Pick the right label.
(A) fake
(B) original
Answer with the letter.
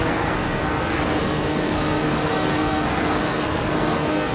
A